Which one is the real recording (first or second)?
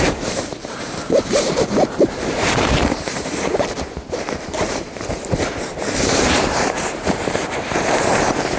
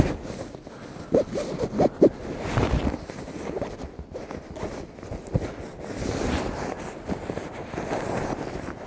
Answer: second